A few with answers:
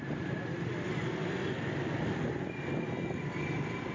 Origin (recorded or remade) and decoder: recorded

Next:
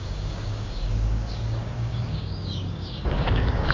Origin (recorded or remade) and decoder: remade, codec, DAC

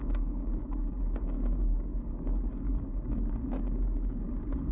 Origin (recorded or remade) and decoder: remade, codec, DAC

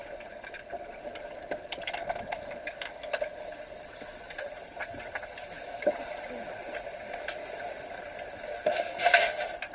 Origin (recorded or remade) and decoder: recorded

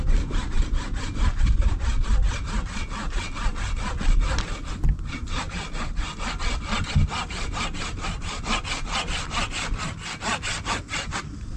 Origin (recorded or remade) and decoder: recorded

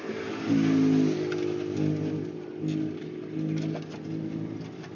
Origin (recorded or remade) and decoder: recorded